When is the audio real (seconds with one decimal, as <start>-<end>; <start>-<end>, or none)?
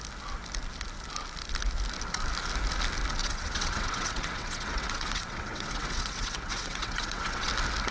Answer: 0.0-3.2; 7.5-7.9